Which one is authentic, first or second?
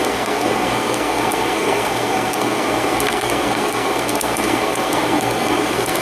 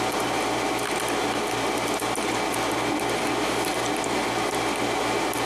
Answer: second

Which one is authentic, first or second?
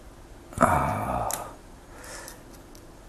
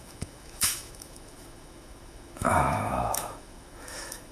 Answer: first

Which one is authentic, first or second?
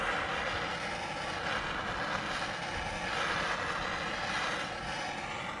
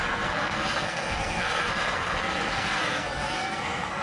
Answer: first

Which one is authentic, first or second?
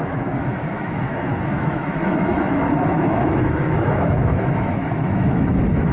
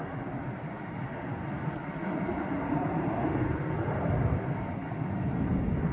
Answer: second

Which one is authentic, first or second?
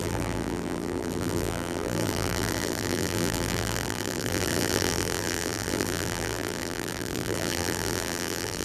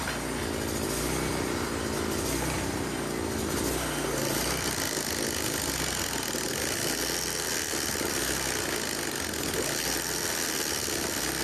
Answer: second